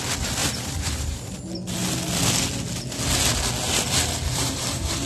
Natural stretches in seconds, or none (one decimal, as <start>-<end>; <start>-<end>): 0.0-0.4; 1.3-4.3

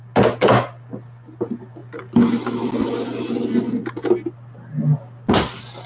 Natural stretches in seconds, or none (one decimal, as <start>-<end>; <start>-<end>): 0.0-5.9

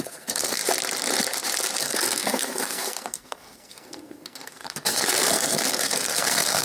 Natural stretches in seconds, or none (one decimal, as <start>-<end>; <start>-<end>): 0.6-1.8

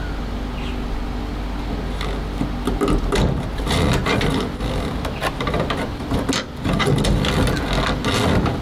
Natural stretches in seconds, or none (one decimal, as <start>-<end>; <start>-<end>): 0.0-8.6